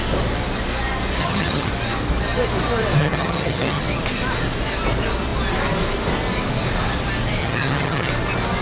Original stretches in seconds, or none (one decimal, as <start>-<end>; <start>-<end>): 0.0-1.2; 1.7-3.0; 3.8-7.4; 8.1-8.6